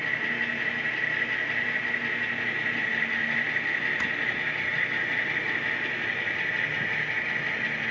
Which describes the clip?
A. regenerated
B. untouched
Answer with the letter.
B